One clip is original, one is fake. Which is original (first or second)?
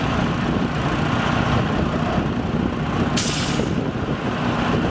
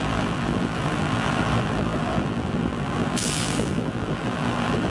first